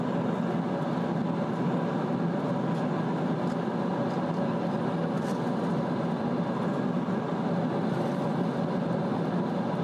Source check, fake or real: real